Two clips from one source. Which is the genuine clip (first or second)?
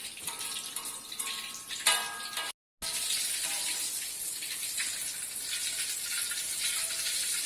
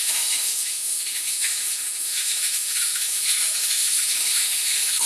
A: first